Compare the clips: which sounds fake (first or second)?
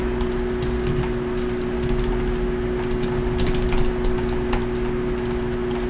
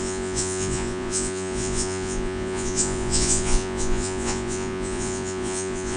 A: second